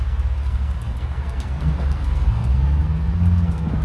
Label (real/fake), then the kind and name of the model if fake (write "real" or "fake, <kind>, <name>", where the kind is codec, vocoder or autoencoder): fake, codec, SNAC